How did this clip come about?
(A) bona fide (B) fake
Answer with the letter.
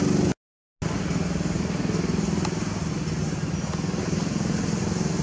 A